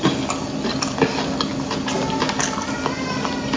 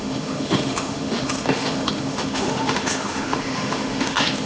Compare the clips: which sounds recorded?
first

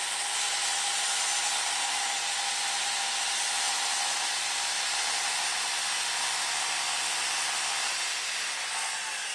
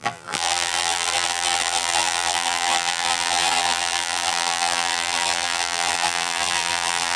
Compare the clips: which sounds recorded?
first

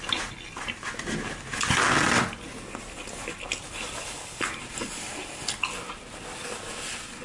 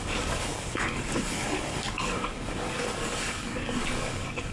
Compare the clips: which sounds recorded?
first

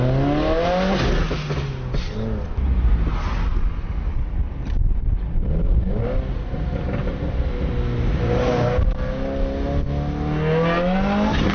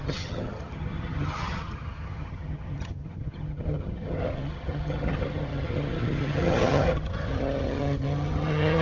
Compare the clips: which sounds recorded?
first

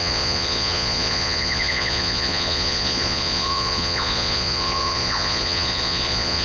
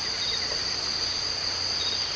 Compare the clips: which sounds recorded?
second